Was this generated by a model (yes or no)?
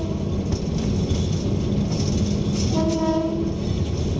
no